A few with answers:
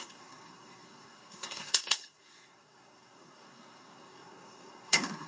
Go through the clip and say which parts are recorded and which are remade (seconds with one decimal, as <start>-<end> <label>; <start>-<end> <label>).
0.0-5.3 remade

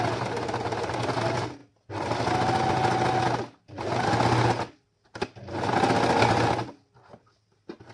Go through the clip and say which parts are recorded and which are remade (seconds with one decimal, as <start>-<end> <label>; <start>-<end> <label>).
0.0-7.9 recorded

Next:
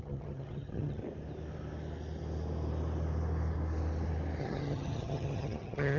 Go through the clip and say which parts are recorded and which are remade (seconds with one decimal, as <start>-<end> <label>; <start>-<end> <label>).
0.0-1.0 remade; 1.0-4.4 recorded; 4.4-6.0 remade